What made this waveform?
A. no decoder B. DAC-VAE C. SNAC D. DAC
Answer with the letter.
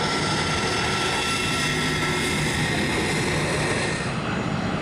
A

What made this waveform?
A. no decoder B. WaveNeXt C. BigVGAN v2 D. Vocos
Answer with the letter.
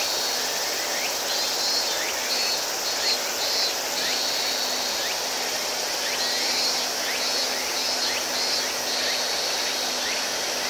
A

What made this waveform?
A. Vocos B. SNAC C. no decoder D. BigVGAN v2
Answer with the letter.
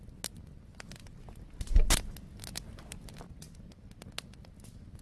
C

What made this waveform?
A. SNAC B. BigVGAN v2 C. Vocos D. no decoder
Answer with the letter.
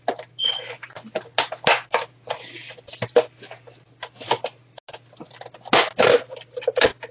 D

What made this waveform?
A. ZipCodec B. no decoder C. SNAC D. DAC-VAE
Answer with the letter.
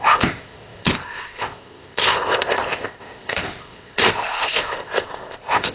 A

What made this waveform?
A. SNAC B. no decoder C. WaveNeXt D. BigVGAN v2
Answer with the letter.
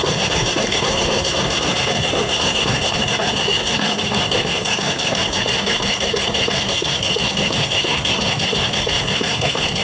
A